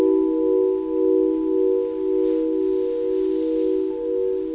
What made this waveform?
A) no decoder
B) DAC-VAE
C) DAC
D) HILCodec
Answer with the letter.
A